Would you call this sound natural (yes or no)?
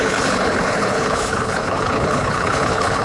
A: no